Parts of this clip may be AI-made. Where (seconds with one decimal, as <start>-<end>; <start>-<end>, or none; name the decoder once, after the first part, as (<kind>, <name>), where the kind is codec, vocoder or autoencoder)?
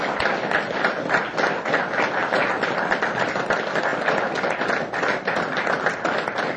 none